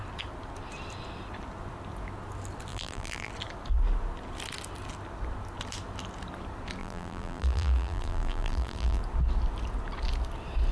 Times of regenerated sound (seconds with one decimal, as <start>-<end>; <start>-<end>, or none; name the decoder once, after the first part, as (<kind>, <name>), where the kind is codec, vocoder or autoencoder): 2.7-3.3 (vocoder, BigVGAN v2); 6.8-9.0